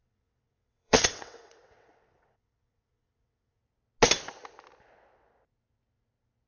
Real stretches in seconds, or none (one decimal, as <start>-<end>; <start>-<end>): 3.6-6.5